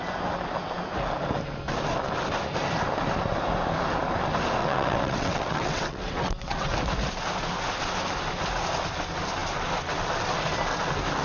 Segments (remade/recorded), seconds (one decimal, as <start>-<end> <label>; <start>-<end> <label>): 0.0-4.6 recorded; 4.6-6.7 remade; 6.7-11.2 recorded